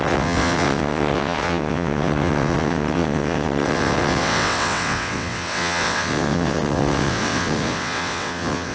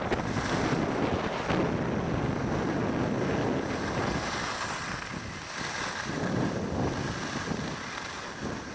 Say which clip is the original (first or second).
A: second